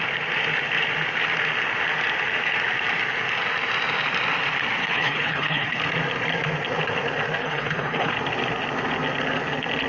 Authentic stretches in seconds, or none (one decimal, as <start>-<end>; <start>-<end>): 0.0-4.8; 5.8-7.4; 8.1-9.9

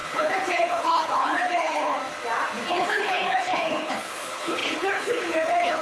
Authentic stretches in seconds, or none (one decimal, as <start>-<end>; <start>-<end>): 2.0-2.7